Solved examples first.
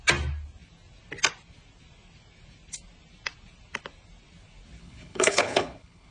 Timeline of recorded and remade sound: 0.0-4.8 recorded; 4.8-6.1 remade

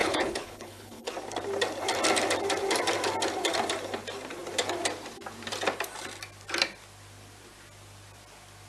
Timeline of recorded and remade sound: 0.0-1.1 remade; 1.1-8.7 recorded

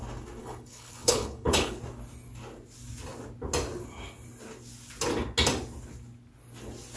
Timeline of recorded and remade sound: 0.0-0.4 recorded; 0.4-1.8 remade; 1.8-7.0 recorded

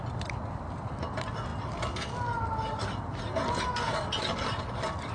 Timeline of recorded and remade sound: 0.0-5.1 recorded

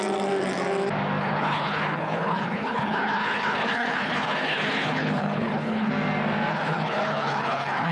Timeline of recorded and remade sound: 0.0-1.2 recorded; 1.2-5.9 remade; 5.9-6.5 recorded; 6.5-7.9 remade

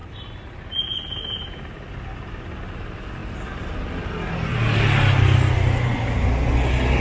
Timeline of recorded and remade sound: 0.0-7.0 recorded